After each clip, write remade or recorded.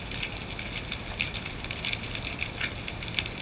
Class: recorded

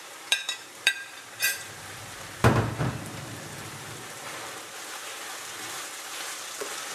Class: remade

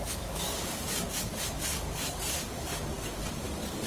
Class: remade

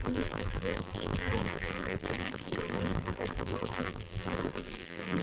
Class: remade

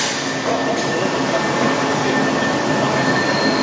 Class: recorded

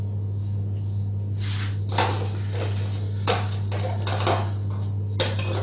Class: recorded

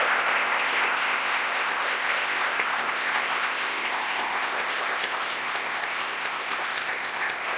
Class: remade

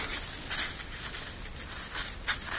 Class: recorded